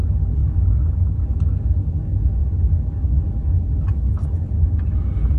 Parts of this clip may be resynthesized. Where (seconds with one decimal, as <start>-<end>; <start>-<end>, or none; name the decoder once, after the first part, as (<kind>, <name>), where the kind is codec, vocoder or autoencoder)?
0.4-0.9 (autoencoder, DAC-VAE)